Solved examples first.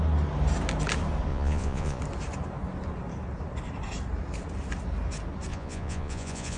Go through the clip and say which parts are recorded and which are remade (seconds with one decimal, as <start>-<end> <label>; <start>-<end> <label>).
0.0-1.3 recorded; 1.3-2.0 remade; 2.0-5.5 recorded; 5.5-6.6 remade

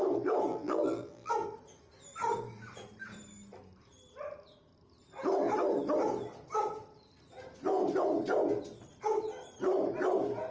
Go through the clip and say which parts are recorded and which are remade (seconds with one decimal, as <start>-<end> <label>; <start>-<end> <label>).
0.0-0.5 recorded; 0.5-1.3 remade; 1.3-10.5 recorded

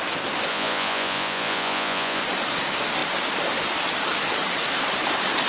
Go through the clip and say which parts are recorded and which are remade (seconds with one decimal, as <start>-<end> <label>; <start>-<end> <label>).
0.0-0.5 recorded; 0.5-2.2 remade; 2.2-5.5 recorded